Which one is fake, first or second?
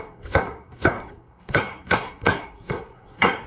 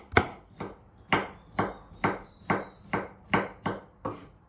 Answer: first